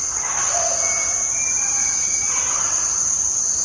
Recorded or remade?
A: recorded